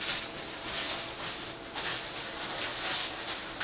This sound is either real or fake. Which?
real